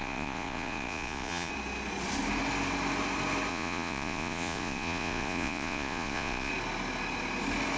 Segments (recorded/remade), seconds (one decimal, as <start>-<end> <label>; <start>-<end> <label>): 0.0-1.5 remade; 1.5-3.5 recorded; 3.5-6.5 remade; 6.5-7.8 recorded